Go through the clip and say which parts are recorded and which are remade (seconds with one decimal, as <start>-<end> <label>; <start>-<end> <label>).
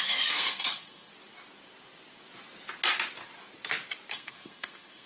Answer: 0.0-1.1 remade; 1.1-4.1 recorded; 4.1-5.1 remade